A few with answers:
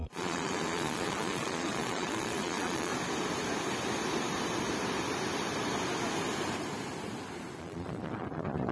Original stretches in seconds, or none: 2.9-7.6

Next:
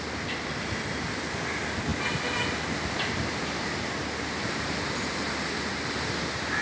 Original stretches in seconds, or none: 0.0-6.6

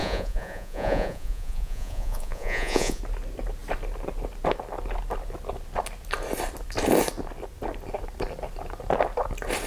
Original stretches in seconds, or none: 3.0-9.7

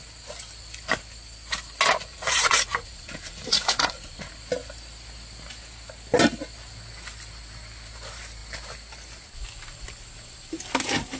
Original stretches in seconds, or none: 0.0-2.1; 4.3-11.2

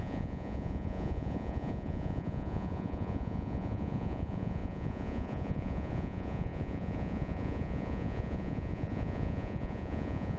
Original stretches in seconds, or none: none

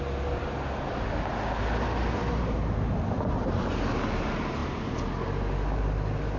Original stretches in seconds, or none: 0.0-6.4

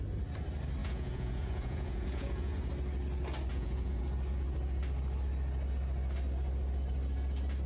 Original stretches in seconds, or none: 0.0-0.8; 2.7-3.5; 4.0-7.7